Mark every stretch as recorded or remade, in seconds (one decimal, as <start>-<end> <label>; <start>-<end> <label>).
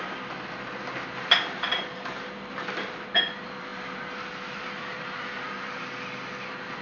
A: 0.0-6.8 recorded